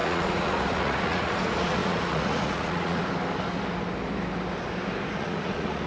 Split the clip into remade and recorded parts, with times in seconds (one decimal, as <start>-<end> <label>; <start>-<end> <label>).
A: 0.0-3.0 remade; 3.0-5.1 recorded; 5.1-5.9 remade